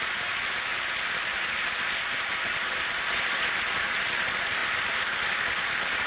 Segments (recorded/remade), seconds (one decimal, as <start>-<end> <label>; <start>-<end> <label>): 0.0-6.1 recorded